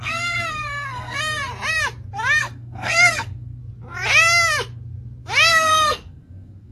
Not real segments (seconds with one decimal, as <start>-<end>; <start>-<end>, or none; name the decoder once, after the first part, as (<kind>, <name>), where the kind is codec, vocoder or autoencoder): 0.0-1.5 (codec, SNAC); 2.4-3.6; 5.5-6.7